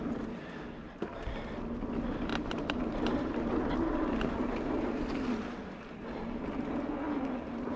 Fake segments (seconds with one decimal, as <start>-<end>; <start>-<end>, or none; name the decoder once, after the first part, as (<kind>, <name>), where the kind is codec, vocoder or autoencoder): 2.3-4.3 (vocoder, BigVGAN v2)